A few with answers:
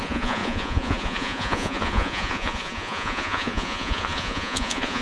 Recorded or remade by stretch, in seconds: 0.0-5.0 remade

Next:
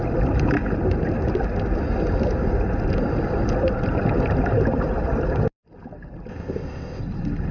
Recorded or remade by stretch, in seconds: 0.0-6.3 recorded; 6.3-7.0 remade; 7.0-7.5 recorded

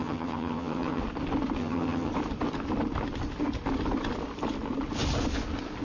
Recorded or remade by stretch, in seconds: 0.0-1.0 remade; 1.0-1.6 recorded; 1.6-2.1 remade; 2.1-5.8 recorded

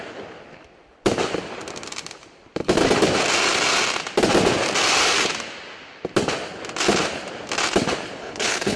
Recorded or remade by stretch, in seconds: 0.0-8.2 recorded; 8.2-8.8 remade

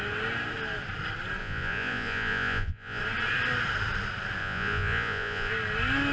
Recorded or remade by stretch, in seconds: 0.0-1.4 recorded; 1.4-3.0 remade; 3.0-4.4 recorded; 4.4-5.5 remade; 5.5-6.1 recorded

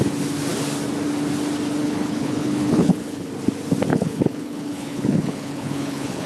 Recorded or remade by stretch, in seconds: 0.0-1.8 recorded; 1.8-3.3 remade; 3.3-3.9 recorded; 3.9-6.3 remade

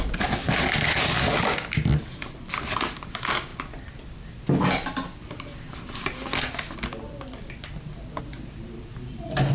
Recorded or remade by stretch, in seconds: 0.0-9.5 recorded